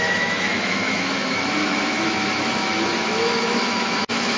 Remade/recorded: remade